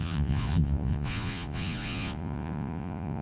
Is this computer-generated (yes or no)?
yes